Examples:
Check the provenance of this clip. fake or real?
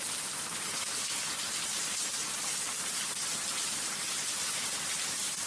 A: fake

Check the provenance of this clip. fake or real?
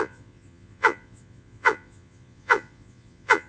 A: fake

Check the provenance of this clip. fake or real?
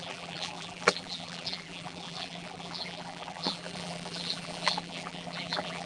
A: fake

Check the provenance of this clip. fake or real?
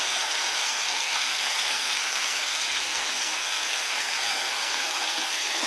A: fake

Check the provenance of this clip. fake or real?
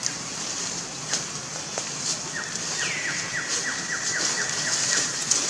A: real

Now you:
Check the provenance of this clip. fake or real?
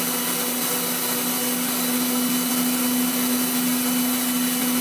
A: real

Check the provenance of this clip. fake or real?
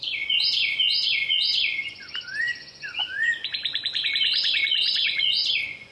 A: fake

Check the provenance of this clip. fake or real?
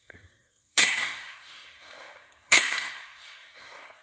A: fake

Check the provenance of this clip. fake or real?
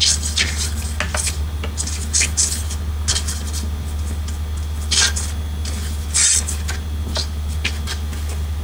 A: real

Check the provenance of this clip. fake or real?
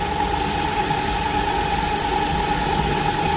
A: real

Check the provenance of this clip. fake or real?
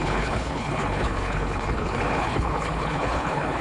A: fake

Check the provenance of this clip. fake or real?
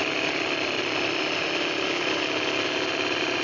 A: real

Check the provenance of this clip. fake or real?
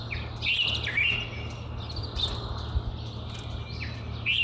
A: real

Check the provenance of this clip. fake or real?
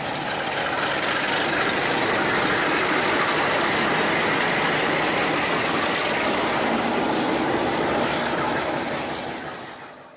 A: real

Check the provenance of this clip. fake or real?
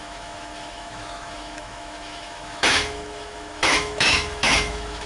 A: fake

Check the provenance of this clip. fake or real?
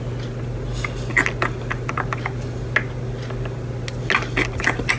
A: real